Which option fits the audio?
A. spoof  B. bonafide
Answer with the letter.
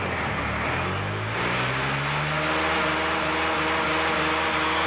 B